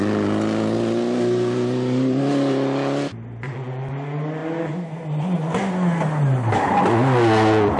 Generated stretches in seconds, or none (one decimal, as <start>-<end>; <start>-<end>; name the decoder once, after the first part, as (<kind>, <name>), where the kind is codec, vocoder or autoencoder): none